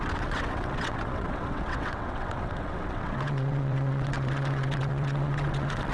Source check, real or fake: fake